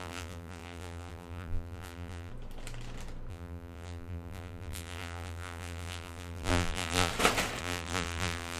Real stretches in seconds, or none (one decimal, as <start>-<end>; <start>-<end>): 2.3-3.3; 7.1-7.6